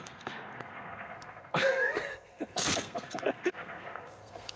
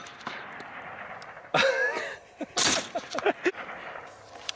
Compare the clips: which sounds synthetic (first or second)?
first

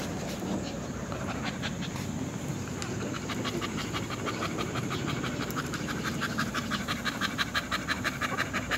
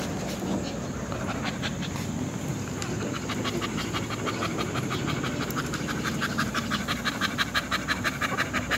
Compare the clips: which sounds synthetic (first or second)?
first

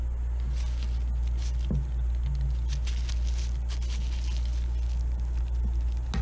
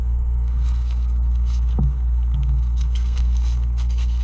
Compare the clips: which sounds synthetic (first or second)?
second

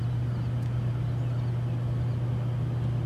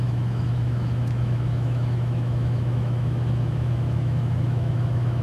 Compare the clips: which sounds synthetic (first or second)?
second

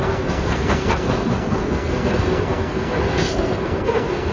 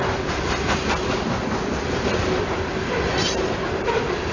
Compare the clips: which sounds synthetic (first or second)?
first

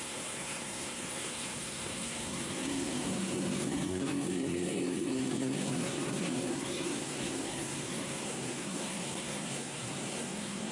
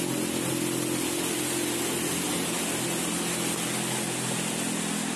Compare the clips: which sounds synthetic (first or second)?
first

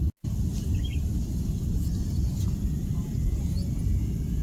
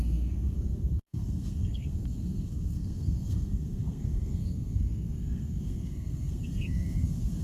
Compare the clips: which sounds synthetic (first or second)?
second